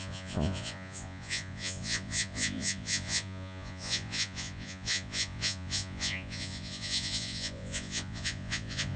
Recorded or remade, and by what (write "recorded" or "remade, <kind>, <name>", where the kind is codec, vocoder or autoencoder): remade, vocoder, Vocos